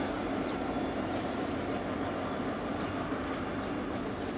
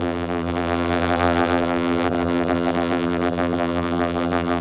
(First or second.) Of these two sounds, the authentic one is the first